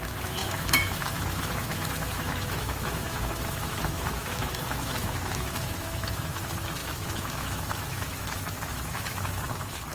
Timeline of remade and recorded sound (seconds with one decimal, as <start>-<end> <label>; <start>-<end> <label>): 0.0-9.9 remade